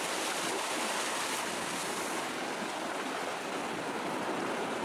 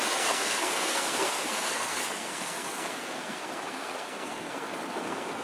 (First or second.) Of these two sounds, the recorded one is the first